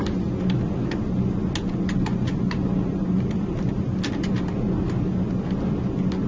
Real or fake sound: real